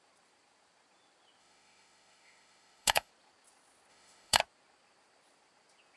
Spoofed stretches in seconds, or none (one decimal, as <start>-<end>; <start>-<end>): 1.4-3.1; 3.9-4.4